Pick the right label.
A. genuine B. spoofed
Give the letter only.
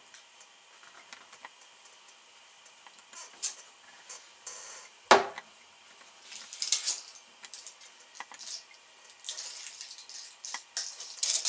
A